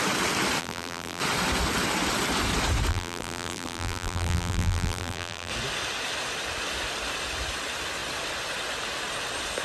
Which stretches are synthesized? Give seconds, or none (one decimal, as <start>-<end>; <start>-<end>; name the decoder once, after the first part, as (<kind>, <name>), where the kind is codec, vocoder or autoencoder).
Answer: 0.6-1.2 (vocoder, BigVGAN v2); 2.9-5.5